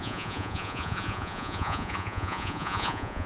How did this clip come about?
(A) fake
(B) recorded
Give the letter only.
A